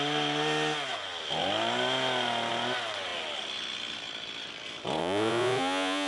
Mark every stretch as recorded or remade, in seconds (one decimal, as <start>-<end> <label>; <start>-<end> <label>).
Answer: 0.0-5.0 recorded; 5.0-6.1 remade

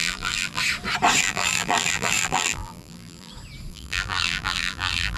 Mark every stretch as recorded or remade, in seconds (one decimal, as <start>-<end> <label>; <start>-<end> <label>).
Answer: 0.0-0.6 remade; 0.6-1.2 recorded; 1.2-3.3 remade; 3.3-3.7 recorded; 3.7-5.2 remade

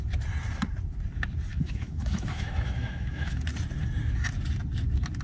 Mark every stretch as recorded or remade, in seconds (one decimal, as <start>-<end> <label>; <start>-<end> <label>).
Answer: 0.0-1.5 recorded; 1.5-3.4 remade; 3.4-5.2 recorded

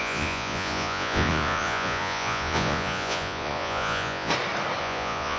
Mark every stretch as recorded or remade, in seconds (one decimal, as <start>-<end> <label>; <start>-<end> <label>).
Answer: 0.0-4.3 remade; 4.3-4.8 recorded; 4.8-5.4 remade

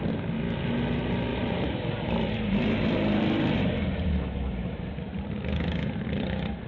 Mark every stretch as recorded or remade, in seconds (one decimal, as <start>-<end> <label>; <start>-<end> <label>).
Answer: 0.0-1.3 recorded; 1.3-5.3 remade; 5.3-6.7 recorded

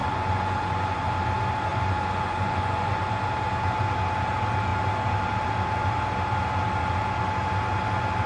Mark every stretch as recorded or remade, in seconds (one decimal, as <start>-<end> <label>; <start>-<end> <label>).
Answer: 0.0-1.1 remade; 1.1-1.7 recorded; 1.7-3.0 remade; 3.0-8.3 recorded